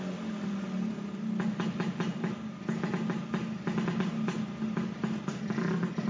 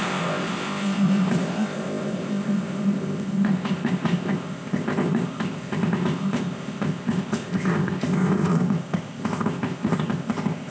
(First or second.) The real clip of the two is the first